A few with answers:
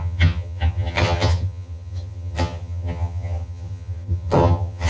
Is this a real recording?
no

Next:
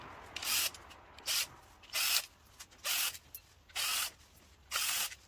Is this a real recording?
yes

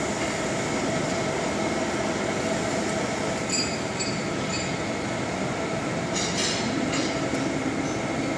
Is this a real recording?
yes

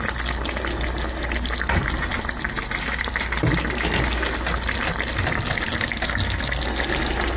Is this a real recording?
yes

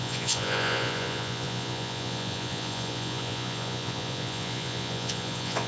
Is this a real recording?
no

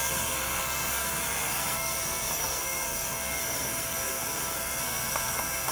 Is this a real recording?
no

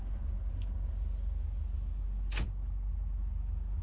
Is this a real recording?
yes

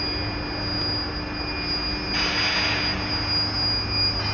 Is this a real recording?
yes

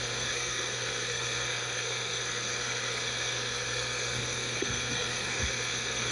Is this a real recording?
no